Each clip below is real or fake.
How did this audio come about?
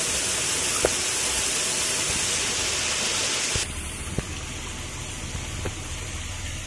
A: real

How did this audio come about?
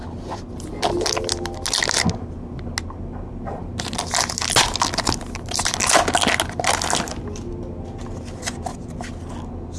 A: real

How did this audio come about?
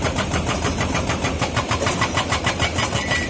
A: fake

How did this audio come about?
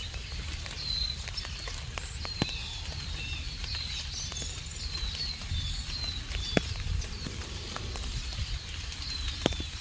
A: real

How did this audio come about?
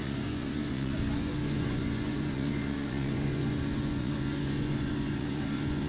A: fake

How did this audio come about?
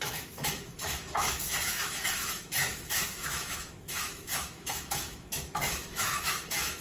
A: fake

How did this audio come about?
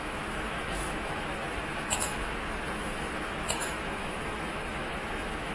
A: fake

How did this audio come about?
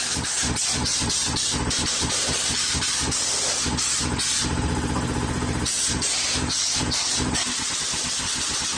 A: fake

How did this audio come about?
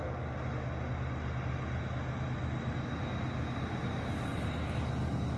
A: real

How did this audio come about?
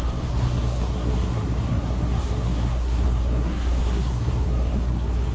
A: fake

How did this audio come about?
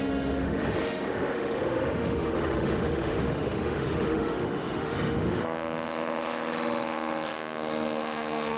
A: fake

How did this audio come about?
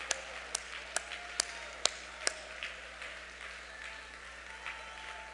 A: real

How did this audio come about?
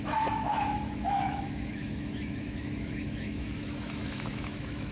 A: fake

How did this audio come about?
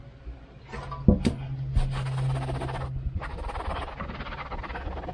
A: real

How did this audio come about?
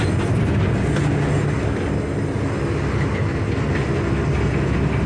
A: real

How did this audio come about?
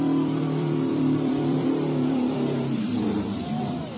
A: fake